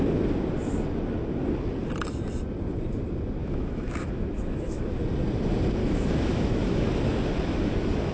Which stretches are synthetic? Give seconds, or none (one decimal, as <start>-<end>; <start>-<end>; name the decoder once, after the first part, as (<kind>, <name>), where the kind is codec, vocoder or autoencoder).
3.4-5.0 (autoencoder, DAC-VAE); 5.8-6.8